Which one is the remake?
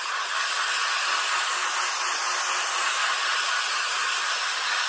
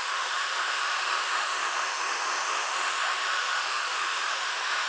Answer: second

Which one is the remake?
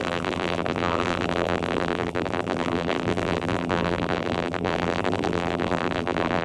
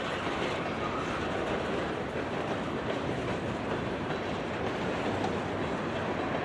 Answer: first